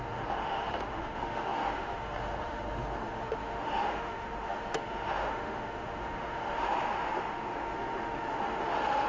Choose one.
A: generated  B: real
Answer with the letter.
A